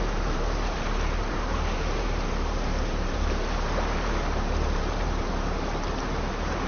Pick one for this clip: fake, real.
fake